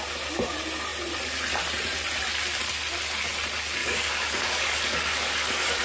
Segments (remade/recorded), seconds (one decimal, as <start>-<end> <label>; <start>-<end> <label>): 0.0-3.8 recorded; 3.8-5.8 remade